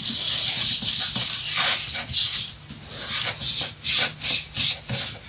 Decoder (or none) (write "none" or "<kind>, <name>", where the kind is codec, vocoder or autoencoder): none